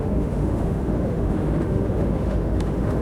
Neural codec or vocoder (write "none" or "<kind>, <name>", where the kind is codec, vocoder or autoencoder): autoencoder, DAC-VAE